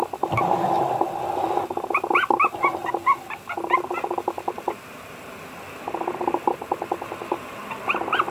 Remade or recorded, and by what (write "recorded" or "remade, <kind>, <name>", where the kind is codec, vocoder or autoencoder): recorded